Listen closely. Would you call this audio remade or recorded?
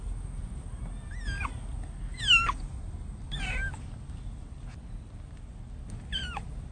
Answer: recorded